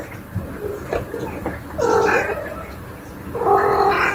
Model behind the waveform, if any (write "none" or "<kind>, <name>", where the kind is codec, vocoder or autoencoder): none